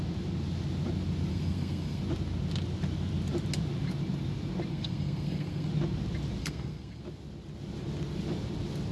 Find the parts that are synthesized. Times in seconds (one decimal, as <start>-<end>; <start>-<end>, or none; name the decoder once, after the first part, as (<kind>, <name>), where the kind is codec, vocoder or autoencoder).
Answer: 1.3-2.0 (codec, SNAC); 4.7-5.7; 6.4-7.0